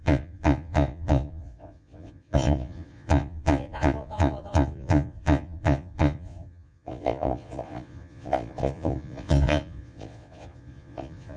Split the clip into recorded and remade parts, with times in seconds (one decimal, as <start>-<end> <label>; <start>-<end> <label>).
0.0-11.4 remade